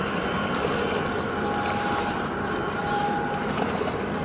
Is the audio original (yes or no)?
yes